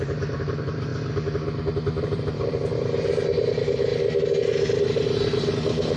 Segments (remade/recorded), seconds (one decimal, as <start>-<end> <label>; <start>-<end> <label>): 0.0-0.9 remade; 0.9-2.0 recorded; 2.0-3.9 remade; 3.9-4.8 recorded; 4.8-6.0 remade